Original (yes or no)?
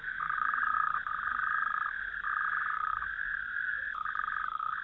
no